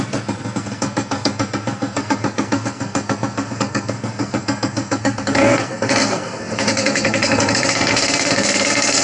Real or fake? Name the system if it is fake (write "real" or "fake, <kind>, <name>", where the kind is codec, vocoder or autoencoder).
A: fake, codec, SNAC